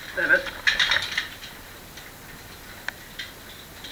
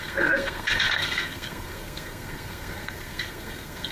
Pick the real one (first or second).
first